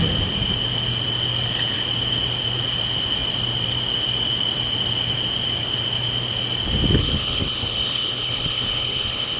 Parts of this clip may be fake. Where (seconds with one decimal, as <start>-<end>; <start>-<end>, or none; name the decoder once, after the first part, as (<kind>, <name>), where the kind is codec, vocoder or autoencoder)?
7.0-9.4 (codec, HILCodec)